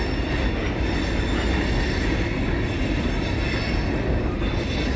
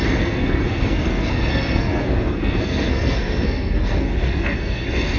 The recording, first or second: first